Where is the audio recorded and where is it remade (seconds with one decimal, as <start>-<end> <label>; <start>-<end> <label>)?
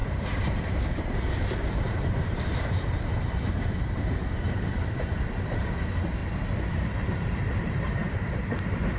0.0-6.2 remade; 6.2-6.7 recorded; 6.7-9.0 remade